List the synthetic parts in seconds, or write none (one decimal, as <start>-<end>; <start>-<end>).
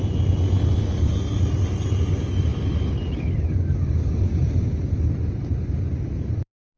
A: none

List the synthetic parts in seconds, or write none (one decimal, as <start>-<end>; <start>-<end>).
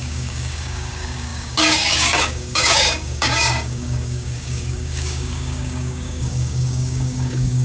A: 0.0-7.6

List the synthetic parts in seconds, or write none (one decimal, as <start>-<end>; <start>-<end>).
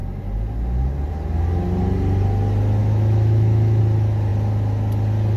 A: 2.8-3.8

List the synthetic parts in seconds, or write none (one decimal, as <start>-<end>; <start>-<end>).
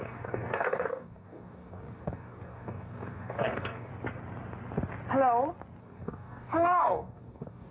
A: 0.0-3.9; 5.8-7.7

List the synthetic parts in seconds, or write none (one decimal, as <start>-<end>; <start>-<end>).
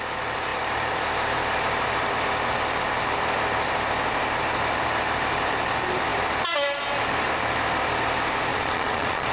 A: 8.5-9.3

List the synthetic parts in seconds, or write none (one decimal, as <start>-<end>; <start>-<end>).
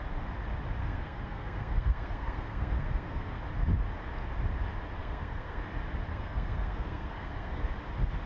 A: 0.8-3.4; 5.0-5.6; 6.1-7.7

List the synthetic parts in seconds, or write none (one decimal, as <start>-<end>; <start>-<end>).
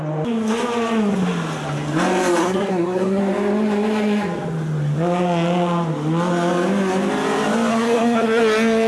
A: 2.4-3.2; 7.7-8.4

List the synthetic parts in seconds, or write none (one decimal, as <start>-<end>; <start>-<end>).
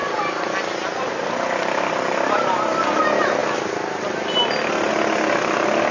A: none